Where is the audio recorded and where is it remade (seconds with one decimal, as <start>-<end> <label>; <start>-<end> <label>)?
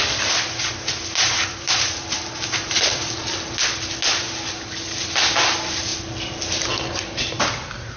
0.0-1.2 recorded; 1.2-3.1 remade; 3.1-8.0 recorded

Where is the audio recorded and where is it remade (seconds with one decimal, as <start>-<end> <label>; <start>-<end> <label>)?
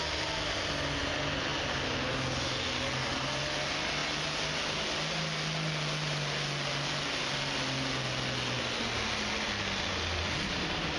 0.0-11.0 recorded